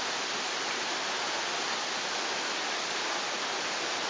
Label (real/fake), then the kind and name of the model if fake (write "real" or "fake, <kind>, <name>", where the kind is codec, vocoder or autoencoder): real